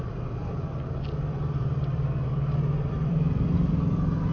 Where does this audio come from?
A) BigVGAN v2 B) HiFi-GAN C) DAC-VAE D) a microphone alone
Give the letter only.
A